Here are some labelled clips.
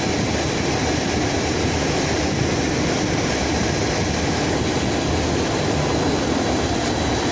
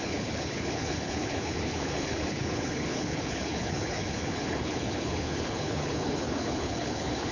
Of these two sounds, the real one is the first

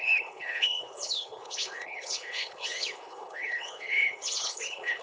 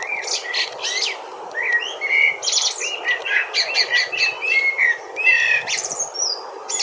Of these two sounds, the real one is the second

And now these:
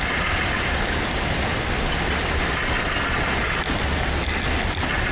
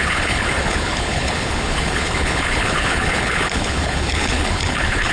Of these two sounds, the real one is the first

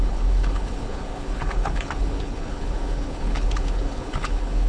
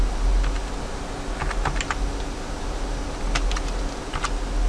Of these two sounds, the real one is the second